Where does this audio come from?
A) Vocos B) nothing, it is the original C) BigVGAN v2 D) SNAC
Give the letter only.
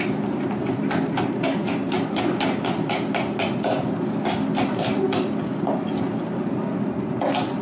B